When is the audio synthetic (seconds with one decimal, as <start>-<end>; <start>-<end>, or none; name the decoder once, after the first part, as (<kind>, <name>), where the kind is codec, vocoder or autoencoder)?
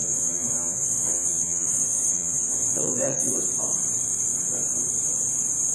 0.0-3.4 (vocoder, Vocos)